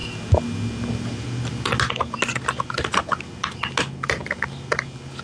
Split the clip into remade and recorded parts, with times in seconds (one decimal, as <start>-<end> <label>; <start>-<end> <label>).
0.0-5.2 recorded